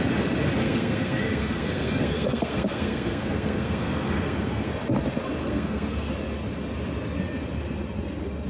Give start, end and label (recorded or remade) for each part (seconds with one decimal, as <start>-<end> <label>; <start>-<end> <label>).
0.0-0.6 recorded; 0.6-4.7 remade; 4.7-5.4 recorded; 5.4-6.1 remade; 6.1-8.5 recorded